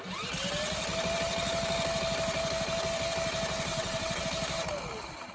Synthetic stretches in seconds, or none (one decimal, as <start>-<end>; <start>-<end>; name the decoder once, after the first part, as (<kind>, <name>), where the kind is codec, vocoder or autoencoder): 3.7-4.2 (vocoder, WaveNeXt)